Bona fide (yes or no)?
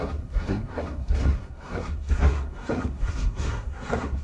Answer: no